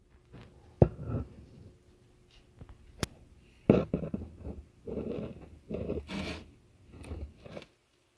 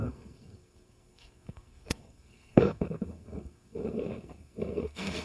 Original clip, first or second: first